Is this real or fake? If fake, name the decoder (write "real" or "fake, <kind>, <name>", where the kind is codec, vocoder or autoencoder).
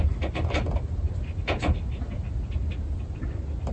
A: real